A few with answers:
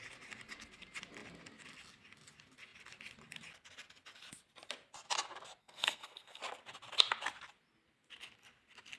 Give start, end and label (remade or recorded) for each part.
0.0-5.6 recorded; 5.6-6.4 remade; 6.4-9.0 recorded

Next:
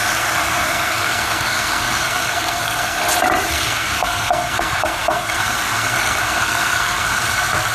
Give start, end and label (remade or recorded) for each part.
0.0-3.0 remade; 3.0-3.5 recorded; 3.5-7.7 remade

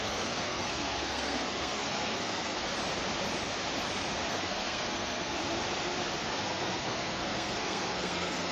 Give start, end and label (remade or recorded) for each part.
0.0-2.7 remade; 2.7-4.3 recorded; 4.3-5.4 remade; 5.4-6.3 recorded; 6.3-8.5 remade

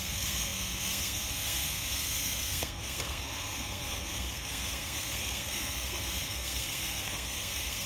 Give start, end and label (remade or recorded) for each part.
0.0-7.9 remade

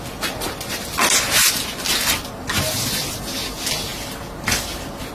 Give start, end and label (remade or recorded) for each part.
0.0-5.1 recorded

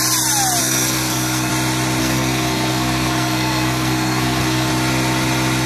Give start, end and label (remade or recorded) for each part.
0.0-0.6 recorded; 0.6-1.5 remade; 1.5-2.0 recorded; 2.0-4.7 remade; 4.7-5.7 recorded

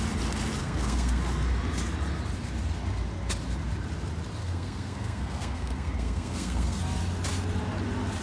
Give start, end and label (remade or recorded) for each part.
0.0-0.6 recorded; 0.6-1.2 remade; 1.2-4.4 recorded; 4.4-6.8 remade; 6.8-8.2 recorded

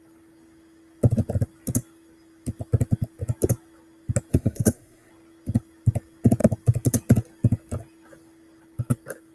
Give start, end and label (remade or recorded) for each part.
0.0-4.3 recorded; 4.3-5.1 remade; 5.1-9.3 recorded